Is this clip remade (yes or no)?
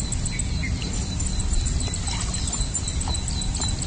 no